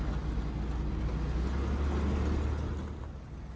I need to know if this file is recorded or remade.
recorded